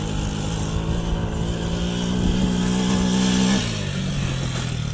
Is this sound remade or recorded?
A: recorded